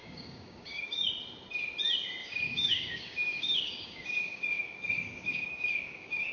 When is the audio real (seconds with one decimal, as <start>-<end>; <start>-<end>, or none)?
1.1-2.2